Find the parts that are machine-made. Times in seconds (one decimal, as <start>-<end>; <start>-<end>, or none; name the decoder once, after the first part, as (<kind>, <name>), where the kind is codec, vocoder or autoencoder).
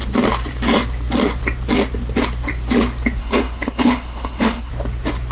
3.2-4.7 (codec, HILCodec)